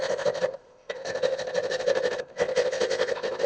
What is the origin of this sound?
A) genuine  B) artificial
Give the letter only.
B